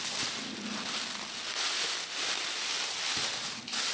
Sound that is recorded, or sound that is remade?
recorded